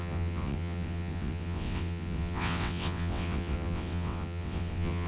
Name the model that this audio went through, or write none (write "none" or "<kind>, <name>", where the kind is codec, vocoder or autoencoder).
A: vocoder, WaveNeXt